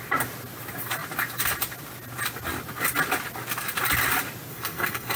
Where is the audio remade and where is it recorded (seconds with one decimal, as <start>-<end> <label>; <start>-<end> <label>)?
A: 0.0-4.5 recorded; 4.5-5.2 remade